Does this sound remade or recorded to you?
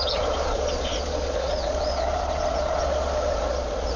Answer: remade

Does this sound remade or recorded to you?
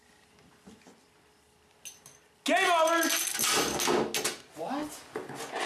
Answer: recorded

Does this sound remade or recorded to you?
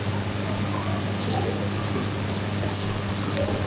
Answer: recorded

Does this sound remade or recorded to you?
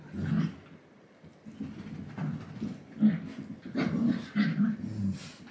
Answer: recorded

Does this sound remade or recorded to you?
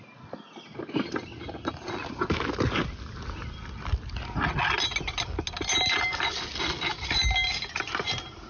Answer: recorded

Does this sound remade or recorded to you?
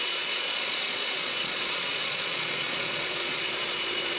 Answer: remade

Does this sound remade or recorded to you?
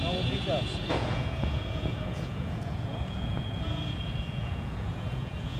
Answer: remade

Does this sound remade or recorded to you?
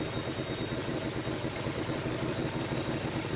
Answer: recorded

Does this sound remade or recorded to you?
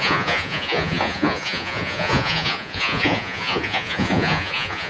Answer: remade